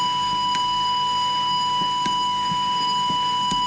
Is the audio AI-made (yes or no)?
yes